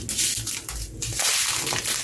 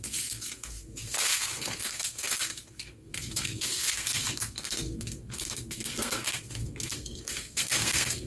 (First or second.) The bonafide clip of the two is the first